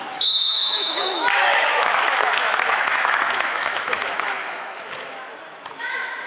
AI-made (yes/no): yes